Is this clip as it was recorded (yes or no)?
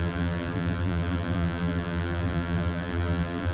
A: no